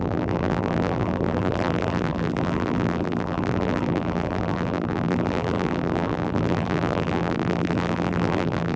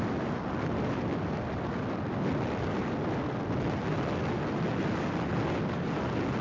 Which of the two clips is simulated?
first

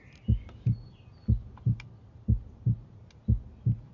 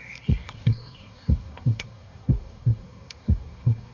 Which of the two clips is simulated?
second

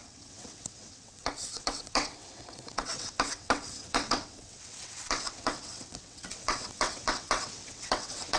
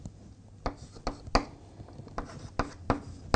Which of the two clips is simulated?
first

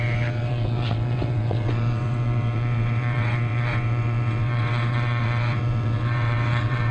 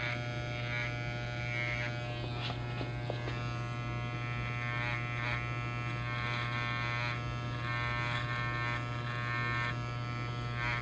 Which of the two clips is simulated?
first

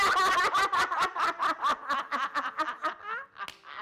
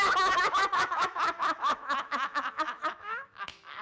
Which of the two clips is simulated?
second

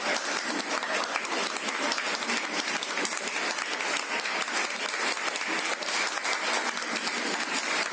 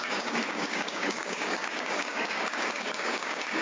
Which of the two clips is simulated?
second